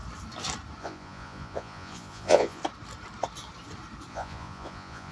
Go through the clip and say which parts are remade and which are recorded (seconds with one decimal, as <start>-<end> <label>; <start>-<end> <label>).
0.0-0.8 recorded; 0.8-2.6 remade; 2.6-4.1 recorded; 4.1-5.1 remade